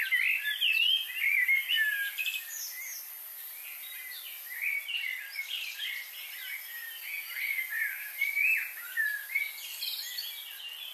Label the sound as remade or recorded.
recorded